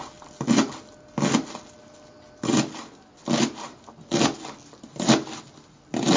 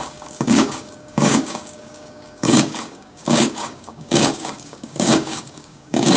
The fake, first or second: second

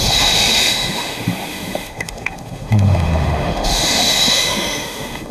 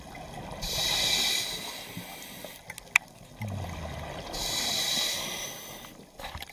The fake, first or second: first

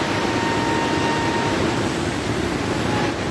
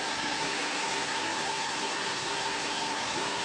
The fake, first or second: second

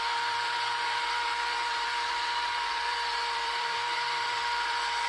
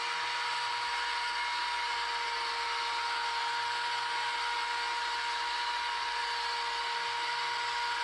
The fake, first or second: first